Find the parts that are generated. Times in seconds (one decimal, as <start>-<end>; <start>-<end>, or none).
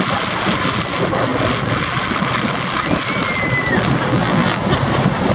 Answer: 4.1-4.6